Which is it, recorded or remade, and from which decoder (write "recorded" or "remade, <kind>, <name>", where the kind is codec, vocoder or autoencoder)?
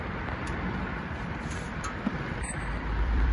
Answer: remade, vocoder, BigVGAN v2